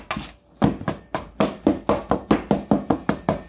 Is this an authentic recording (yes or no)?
yes